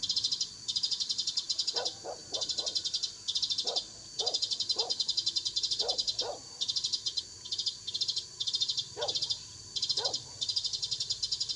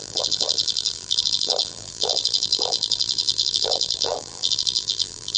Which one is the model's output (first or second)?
second